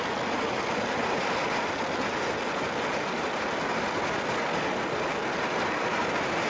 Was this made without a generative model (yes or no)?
yes